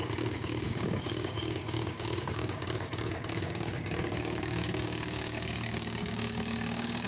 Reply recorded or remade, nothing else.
remade